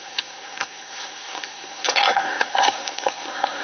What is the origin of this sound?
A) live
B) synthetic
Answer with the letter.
B